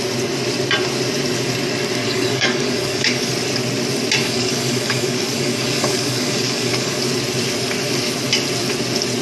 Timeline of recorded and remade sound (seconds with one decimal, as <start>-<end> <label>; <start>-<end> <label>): 0.0-2.0 recorded; 2.0-3.3 remade; 3.3-4.2 recorded; 4.2-7.0 remade; 7.0-9.2 recorded